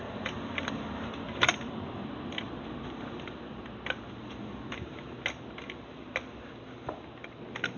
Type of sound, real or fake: real